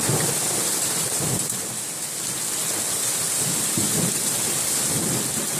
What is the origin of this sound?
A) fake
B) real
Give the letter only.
B